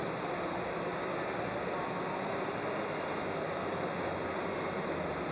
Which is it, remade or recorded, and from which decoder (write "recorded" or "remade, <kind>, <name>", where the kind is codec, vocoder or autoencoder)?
recorded